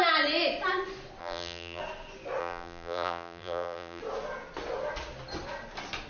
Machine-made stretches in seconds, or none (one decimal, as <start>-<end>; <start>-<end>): 1.2-1.8; 2.4-4.0